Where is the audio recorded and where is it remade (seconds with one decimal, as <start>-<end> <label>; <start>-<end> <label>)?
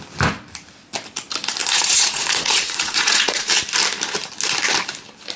0.0-1.6 recorded; 1.6-3.5 remade; 3.5-5.4 recorded